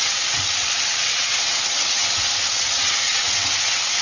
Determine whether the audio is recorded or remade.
remade